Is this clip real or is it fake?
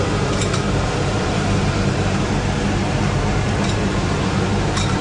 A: fake